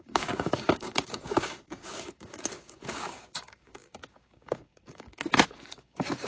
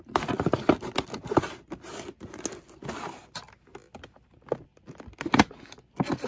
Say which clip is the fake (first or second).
first